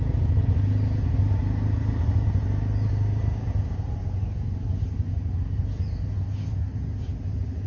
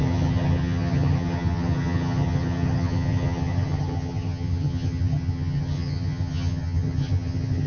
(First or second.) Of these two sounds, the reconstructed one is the second